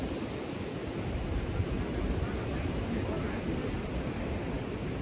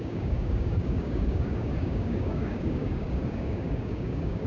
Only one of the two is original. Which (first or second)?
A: first